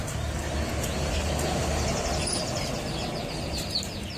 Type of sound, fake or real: real